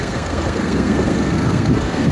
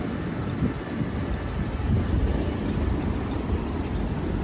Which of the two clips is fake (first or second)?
first